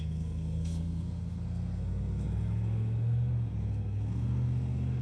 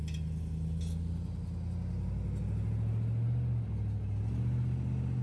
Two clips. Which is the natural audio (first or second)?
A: second